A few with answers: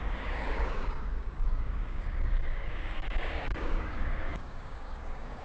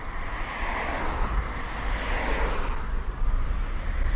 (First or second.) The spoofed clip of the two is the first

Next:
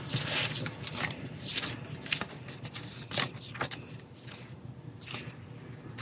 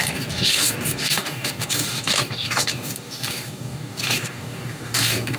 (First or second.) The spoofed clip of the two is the second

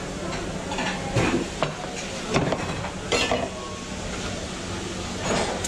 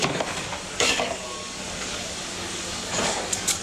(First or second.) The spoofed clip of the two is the second